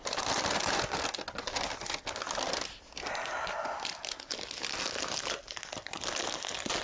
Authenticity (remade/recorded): recorded